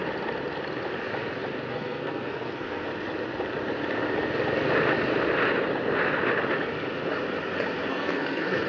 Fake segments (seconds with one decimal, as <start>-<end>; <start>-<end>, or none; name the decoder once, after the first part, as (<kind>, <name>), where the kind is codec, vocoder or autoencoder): 1.7-2.9 (codec, SNAC); 7.9-8.7

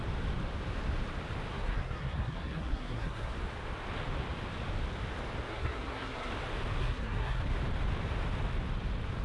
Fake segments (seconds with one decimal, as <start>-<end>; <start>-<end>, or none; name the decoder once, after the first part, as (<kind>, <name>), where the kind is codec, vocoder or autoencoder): 1.5-3.3 (codec, SNAC); 5.5-6.3; 6.8-7.4